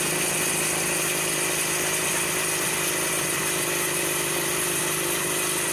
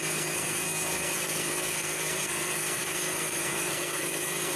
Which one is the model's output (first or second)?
second